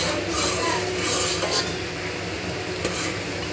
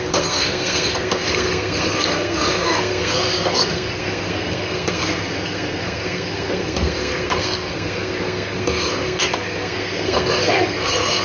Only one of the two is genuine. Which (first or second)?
first